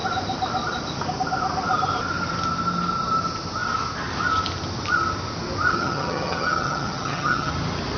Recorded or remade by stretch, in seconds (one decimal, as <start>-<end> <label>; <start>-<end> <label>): 0.0-5.7 recorded; 5.7-7.5 remade; 7.5-8.0 recorded